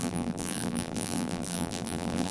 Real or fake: fake